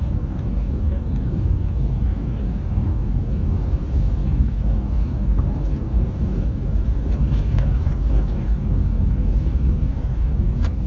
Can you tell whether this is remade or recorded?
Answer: remade